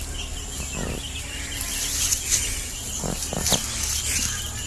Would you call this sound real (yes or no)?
yes